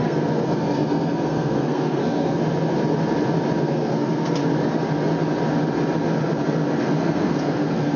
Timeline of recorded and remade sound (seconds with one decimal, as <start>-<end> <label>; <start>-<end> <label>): 0.0-2.4 remade; 2.4-3.6 recorded; 3.6-4.4 remade; 4.4-6.8 recorded; 6.8-8.0 remade